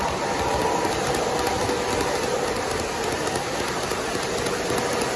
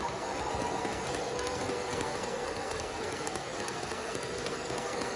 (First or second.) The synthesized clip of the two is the second